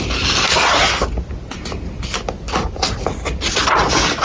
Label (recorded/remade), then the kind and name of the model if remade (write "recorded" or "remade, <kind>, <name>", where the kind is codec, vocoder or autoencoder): recorded